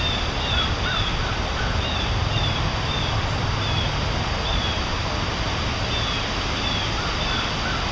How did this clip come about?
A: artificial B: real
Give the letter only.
B